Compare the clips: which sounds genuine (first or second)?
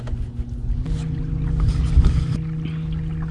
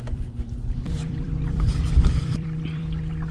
first